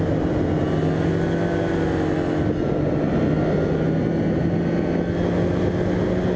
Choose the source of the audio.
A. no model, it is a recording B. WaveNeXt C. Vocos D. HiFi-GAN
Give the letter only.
A